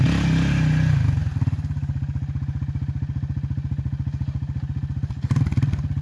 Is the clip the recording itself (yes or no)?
yes